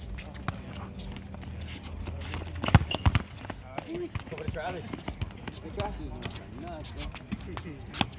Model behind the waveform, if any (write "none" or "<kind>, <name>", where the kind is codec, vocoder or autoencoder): none